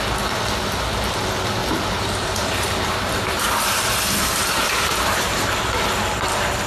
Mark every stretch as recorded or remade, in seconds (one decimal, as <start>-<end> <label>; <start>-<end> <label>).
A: 0.0-1.6 recorded; 1.6-5.6 remade; 5.6-6.7 recorded